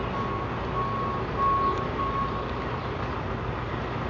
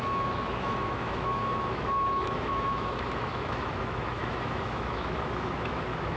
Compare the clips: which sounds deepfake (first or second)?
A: second